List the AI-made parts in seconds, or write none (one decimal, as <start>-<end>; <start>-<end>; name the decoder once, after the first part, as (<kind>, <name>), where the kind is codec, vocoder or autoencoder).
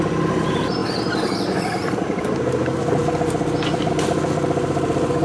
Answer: none